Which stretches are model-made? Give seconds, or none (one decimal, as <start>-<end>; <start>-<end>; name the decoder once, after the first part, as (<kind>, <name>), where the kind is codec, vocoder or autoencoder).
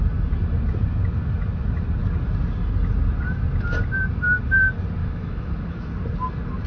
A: 5.0-5.9 (autoencoder, DAC-VAE)